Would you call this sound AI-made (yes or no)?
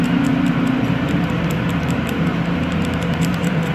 yes